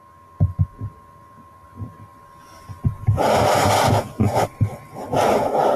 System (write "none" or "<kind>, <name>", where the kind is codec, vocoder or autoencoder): none